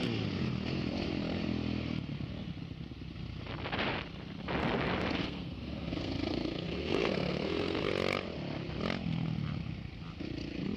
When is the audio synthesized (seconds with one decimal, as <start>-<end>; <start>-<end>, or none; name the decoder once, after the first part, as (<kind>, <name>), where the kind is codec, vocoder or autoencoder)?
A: 5.2-7.9 (codec, SNAC)